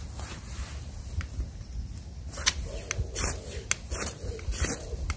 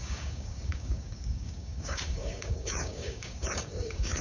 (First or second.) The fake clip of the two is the second